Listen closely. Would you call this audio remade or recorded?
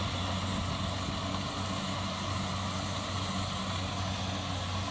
recorded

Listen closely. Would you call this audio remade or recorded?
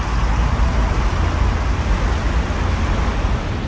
recorded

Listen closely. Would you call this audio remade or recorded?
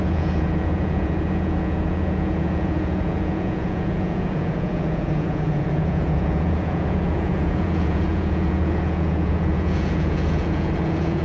remade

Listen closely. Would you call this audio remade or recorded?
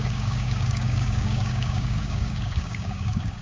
remade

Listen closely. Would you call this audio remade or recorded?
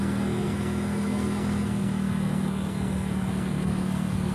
remade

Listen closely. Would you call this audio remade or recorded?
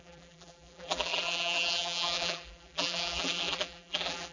remade